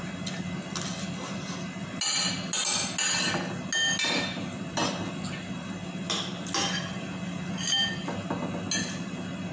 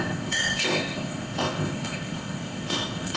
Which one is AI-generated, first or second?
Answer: second